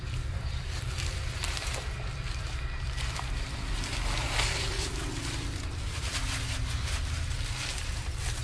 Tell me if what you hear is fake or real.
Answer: fake